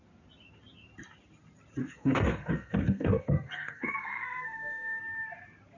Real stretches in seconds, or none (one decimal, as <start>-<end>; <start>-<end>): 0.0-1.8; 5.0-5.8